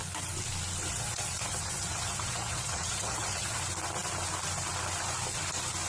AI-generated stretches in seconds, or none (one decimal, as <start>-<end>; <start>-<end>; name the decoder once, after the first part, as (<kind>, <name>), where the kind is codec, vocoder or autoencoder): 0.9-3.6 (vocoder, WaveNeXt)